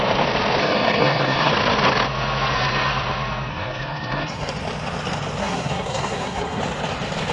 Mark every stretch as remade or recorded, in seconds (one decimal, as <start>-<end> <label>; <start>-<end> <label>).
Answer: 0.0-0.6 recorded; 0.6-1.5 remade; 1.5-3.5 recorded; 3.5-4.5 remade; 4.5-5.4 recorded; 5.4-6.6 remade; 6.6-7.3 recorded